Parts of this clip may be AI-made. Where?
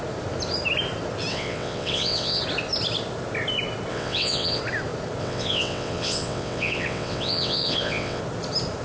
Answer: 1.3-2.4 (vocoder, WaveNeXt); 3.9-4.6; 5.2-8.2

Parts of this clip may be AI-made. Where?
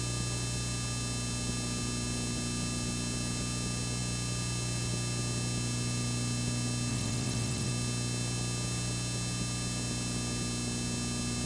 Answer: 6.9-7.7 (vocoder, WaveNeXt)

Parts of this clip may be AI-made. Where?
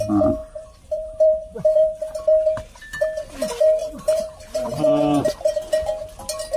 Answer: 0.4-2.0 (vocoder, BigVGAN v2); 3.8-5.2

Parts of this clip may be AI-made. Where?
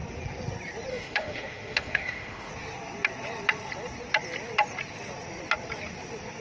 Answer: 0.9-2.5 (autoencoder, DAC-VAE)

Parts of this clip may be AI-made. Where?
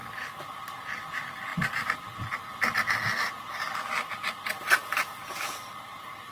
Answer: 1.5-4.1 (vocoder, BigVGAN v2)